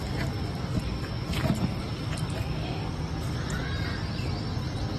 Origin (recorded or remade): recorded